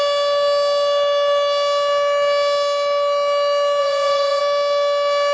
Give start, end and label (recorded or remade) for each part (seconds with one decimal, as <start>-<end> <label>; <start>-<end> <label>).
0.0-3.8 recorded; 3.8-4.4 remade; 4.4-5.3 recorded